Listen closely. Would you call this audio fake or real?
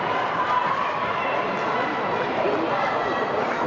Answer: fake